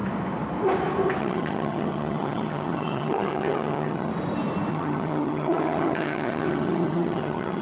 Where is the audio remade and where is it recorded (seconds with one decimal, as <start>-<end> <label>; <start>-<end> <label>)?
0.0-1.2 recorded; 1.2-4.1 remade; 4.1-4.7 recorded; 4.7-7.6 remade